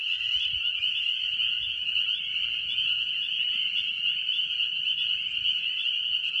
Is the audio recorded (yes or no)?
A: no